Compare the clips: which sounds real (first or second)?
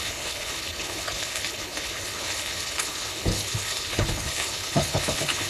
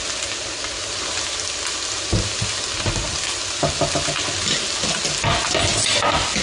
second